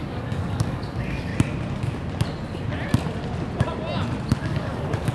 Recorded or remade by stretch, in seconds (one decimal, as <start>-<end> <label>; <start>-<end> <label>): 0.0-1.3 remade; 1.3-4.4 recorded; 4.4-5.1 remade